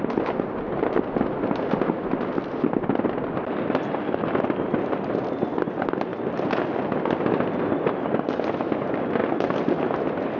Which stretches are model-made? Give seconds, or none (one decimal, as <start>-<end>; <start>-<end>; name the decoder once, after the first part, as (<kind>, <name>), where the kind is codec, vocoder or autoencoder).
none